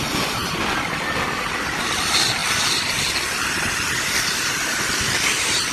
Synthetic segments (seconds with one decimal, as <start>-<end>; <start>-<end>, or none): none